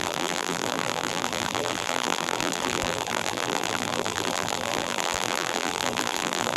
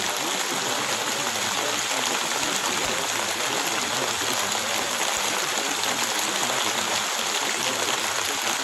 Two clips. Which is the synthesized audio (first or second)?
first